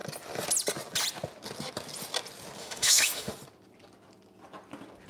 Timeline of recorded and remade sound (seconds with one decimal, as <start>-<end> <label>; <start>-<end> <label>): 0.0-2.6 recorded; 2.6-3.3 remade; 3.3-5.1 recorded